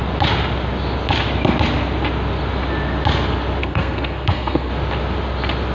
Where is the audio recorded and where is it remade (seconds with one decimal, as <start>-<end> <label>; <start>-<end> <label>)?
0.0-3.6 recorded; 3.6-4.7 remade; 4.7-5.7 recorded